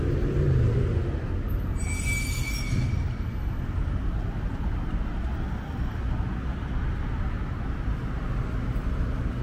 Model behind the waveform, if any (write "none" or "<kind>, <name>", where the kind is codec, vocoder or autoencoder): none